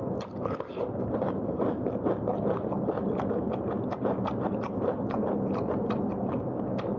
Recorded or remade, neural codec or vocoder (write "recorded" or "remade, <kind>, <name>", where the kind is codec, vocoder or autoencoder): recorded